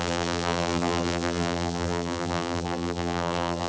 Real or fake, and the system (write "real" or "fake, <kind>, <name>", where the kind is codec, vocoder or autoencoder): fake, vocoder, BigVGAN v2